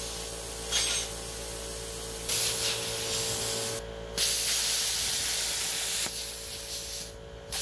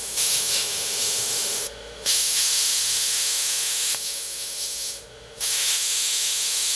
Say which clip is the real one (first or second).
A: first